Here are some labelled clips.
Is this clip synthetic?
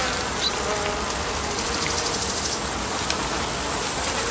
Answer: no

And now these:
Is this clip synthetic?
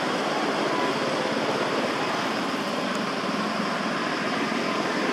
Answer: no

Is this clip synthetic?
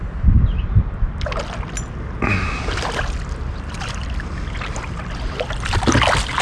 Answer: no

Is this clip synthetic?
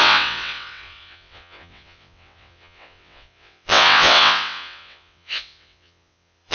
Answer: yes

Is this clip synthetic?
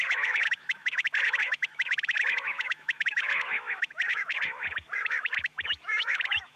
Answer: yes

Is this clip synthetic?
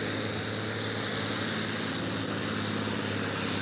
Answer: no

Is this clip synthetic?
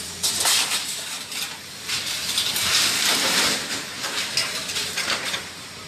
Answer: yes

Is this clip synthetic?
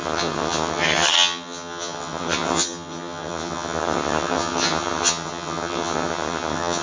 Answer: yes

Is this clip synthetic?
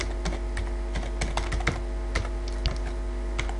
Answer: no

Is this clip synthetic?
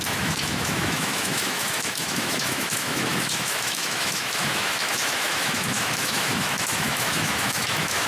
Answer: yes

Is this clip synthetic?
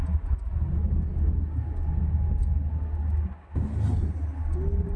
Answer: no